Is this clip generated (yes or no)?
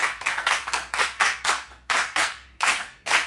yes